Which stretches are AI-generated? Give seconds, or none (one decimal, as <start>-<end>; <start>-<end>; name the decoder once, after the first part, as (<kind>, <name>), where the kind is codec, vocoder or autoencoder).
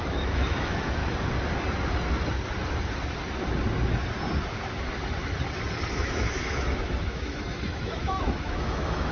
0.0-1.0 (autoencoder, DAC-VAE); 5.9-9.1